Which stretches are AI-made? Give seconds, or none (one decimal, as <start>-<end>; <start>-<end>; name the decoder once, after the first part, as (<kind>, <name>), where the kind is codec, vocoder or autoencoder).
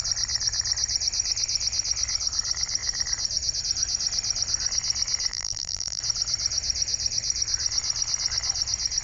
5.3-6.0 (vocoder, BigVGAN v2)